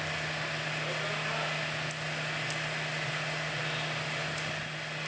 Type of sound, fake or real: real